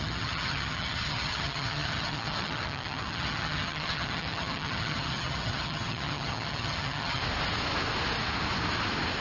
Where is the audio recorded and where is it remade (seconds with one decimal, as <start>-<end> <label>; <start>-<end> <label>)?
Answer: 0.0-7.2 remade; 7.2-9.2 recorded